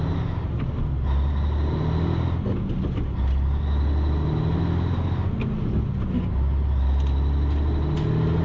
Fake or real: real